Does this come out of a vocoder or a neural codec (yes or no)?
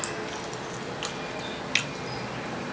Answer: no